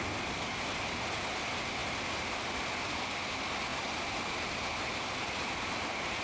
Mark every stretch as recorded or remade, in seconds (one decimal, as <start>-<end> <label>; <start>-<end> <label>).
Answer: 0.0-1.8 recorded; 1.8-3.1 remade; 3.1-3.7 recorded; 3.7-5.5 remade; 5.5-6.2 recorded